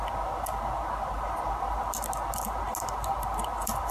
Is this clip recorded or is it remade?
recorded